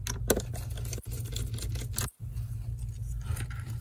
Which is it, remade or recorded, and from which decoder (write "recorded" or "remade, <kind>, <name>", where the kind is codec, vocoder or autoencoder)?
recorded